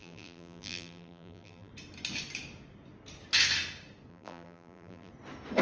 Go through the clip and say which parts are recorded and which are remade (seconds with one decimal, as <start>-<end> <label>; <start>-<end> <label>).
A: 0.0-1.7 remade; 1.7-4.1 recorded; 4.1-5.1 remade; 5.1-5.6 recorded